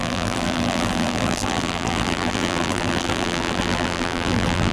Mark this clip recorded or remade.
remade